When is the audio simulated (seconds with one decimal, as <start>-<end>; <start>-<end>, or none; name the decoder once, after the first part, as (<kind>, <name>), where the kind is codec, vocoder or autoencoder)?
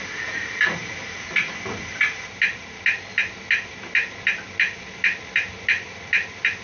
none